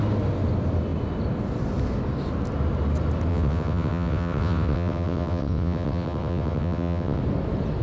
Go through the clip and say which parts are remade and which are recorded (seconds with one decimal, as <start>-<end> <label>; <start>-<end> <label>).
0.0-3.3 recorded; 3.3-7.2 remade; 7.2-7.8 recorded